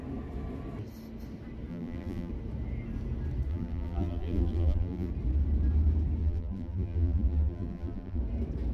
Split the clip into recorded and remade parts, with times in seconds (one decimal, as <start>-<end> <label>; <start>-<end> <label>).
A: 0.0-1.7 recorded; 1.7-2.3 remade; 2.3-3.5 recorded; 3.5-5.1 remade; 5.1-6.2 recorded; 6.2-8.2 remade; 8.2-8.7 recorded